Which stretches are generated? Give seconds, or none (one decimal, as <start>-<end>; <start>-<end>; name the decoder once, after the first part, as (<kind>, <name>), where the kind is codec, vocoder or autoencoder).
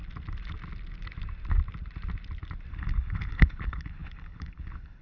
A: 2.7-5.0 (codec, HILCodec)